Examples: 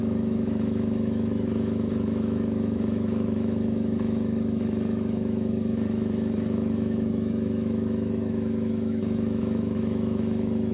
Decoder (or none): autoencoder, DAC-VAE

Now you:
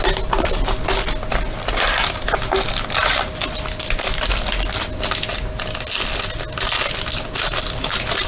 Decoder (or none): none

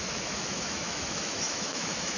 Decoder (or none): autoencoder, DAC-VAE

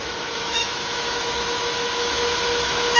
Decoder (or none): autoencoder, DAC-VAE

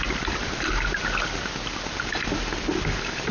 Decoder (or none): none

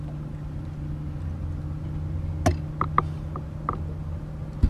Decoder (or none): none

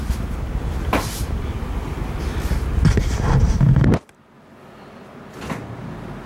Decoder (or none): none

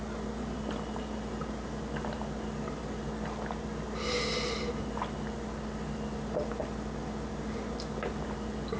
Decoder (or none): none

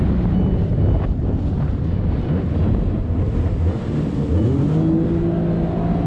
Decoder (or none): none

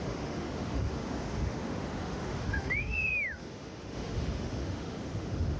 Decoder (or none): autoencoder, DAC-VAE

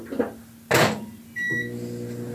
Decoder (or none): none